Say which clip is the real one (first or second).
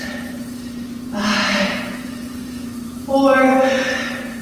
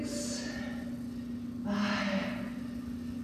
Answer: second